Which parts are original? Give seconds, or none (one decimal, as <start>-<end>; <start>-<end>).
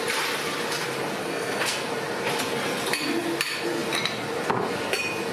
0.0-1.2; 1.9-5.3